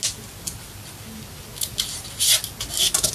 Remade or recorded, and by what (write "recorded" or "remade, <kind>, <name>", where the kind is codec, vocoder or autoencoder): recorded